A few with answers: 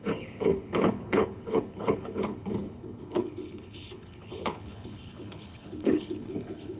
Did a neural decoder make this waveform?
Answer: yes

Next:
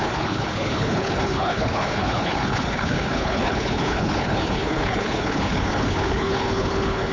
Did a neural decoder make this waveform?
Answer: yes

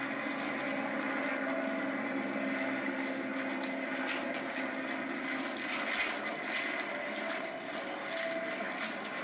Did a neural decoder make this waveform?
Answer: no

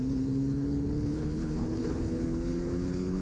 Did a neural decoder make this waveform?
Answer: yes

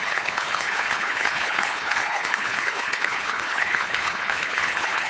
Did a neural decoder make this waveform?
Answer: yes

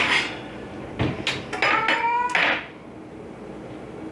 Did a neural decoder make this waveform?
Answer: no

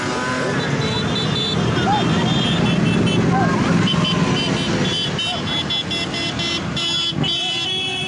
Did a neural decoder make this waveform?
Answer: no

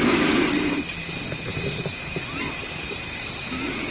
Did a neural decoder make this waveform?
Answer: no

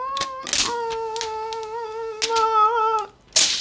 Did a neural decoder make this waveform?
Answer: no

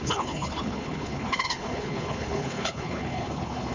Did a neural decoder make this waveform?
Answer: yes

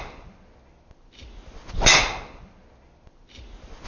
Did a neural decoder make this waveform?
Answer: no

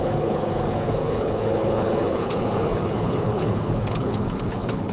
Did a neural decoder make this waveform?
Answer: yes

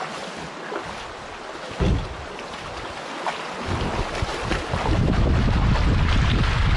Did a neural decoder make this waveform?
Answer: no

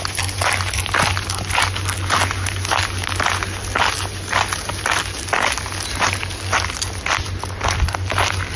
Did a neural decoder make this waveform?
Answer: no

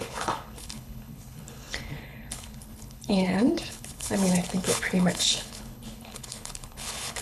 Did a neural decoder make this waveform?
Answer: yes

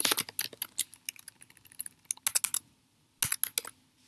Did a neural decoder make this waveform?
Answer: no